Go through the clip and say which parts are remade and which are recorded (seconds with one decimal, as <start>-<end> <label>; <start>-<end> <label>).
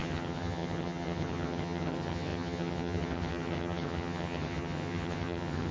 0.0-5.7 remade